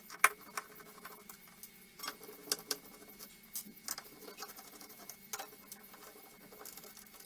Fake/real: real